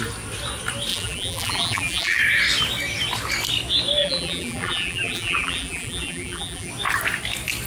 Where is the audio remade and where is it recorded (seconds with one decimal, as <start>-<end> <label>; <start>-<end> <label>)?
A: 0.0-0.9 recorded; 0.9-2.2 remade; 2.2-4.0 recorded; 4.0-6.7 remade; 6.7-7.7 recorded